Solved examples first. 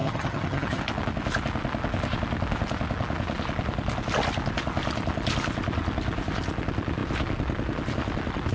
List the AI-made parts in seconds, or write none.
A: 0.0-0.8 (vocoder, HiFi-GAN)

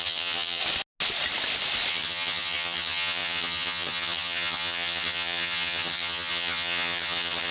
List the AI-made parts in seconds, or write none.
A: 0.0-0.6 (vocoder, HiFi-GAN); 1.9-7.5